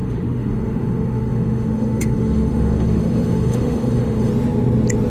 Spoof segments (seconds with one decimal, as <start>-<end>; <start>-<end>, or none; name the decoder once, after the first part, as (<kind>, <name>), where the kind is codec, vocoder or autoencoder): 0.0-4.3 (autoencoder, DAC-VAE)